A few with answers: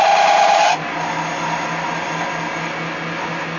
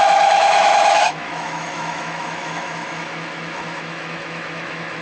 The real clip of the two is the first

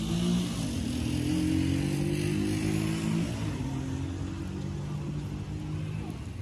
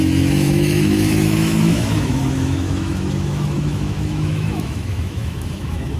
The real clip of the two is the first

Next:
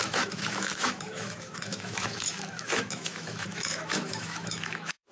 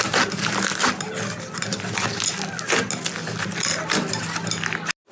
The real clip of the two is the second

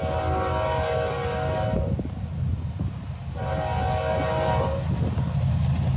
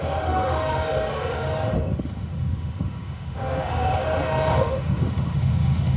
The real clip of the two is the first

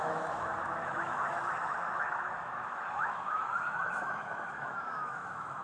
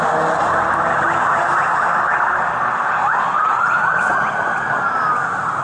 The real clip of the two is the second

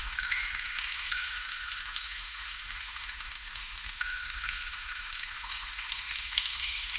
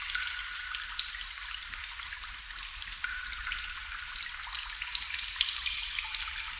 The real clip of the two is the second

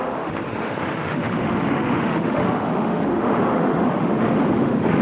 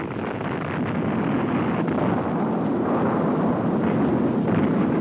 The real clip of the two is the second